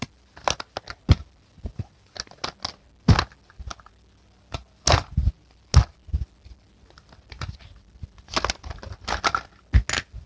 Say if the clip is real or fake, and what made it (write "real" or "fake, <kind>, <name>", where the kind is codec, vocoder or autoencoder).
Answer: real